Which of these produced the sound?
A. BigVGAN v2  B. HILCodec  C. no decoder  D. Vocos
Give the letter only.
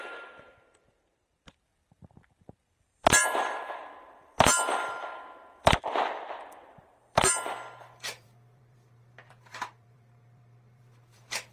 A